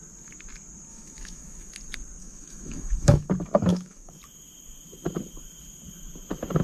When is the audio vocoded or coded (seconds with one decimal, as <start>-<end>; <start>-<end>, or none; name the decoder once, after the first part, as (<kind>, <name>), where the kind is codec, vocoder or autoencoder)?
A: 0.9-1.7 (autoencoder, DAC-VAE); 2.2-3.3; 3.7-4.2